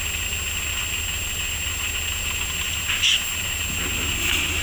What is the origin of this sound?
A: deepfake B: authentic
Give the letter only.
B